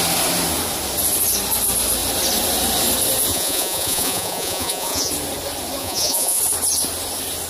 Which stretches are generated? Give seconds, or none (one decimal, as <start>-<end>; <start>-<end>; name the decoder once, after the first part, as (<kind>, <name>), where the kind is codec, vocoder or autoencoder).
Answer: 3.3-5.1 (vocoder, Vocos); 5.8-6.4